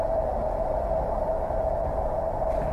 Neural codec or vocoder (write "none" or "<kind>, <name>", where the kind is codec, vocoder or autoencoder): none